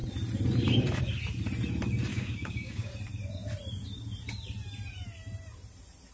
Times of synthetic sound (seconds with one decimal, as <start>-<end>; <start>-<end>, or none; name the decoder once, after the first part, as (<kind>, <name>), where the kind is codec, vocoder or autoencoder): 2.1-2.9 (codec, DAC)